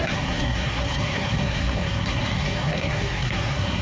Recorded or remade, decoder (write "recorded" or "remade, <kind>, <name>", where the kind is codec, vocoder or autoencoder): remade, codec, SNAC